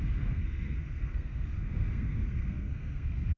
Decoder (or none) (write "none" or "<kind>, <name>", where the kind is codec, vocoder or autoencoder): codec, SNAC